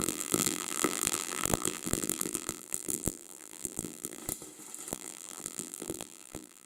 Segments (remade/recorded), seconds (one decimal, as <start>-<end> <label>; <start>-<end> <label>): 0.0-4.2 remade; 4.2-4.9 recorded; 4.9-6.7 remade